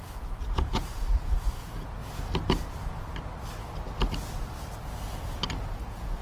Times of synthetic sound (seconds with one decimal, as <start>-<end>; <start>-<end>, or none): 0.0-2.0; 5.7-6.2